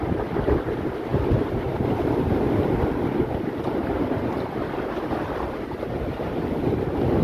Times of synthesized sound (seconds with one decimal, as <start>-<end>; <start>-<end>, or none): none